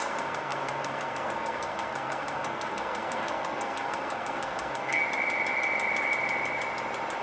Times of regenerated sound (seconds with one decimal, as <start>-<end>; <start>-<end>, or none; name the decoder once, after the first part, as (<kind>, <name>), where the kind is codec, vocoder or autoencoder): 0.0-5.0 (codec, SNAC)